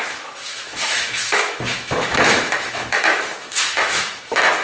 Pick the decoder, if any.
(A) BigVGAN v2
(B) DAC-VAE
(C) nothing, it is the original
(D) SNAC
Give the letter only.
B